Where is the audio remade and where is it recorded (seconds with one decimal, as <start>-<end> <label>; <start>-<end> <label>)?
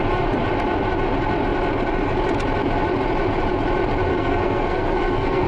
0.0-4.1 recorded; 4.1-5.5 remade